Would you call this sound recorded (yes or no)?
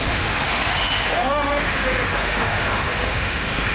no